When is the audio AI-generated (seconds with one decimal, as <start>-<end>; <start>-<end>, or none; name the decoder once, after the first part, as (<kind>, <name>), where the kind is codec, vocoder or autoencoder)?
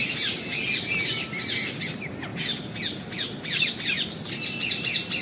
none